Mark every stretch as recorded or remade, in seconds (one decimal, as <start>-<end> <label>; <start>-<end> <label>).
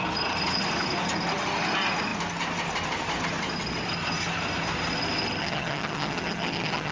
0.0-5.4 recorded; 5.4-6.9 remade